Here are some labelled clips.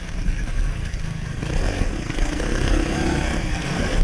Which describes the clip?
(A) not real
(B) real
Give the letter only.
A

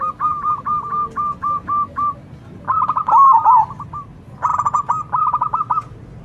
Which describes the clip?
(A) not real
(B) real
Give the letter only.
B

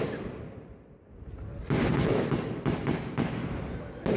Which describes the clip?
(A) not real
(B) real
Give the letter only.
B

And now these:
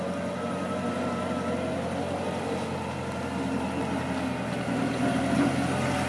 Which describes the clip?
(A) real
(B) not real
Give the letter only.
A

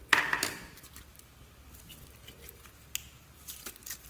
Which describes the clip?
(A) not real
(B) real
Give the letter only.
B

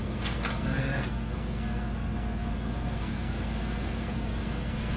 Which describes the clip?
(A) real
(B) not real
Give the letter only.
B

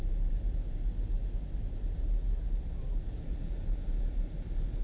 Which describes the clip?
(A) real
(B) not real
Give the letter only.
A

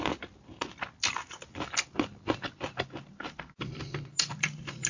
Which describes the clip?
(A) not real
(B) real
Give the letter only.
B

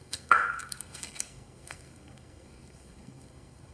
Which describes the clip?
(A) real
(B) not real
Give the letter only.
B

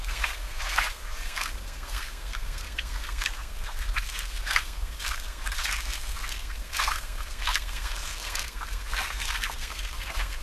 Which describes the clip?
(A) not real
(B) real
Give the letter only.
A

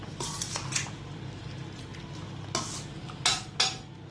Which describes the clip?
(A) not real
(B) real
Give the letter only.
B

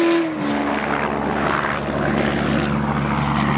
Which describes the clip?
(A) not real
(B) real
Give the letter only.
B